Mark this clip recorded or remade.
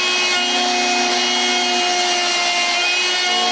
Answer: recorded